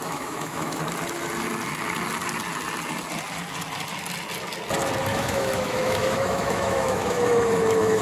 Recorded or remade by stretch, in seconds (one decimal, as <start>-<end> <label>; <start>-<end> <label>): 0.0-0.8 remade; 0.8-5.1 recorded; 5.1-8.0 remade